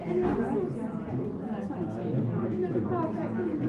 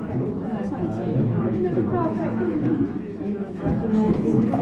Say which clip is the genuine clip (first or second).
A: first